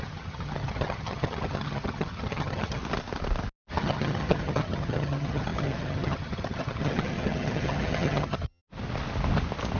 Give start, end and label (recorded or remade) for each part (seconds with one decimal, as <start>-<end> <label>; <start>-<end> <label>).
0.0-2.8 remade; 2.8-3.7 recorded; 3.7-8.6 remade; 8.6-9.8 recorded